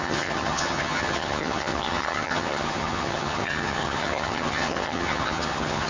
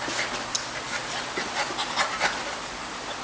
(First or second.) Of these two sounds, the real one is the second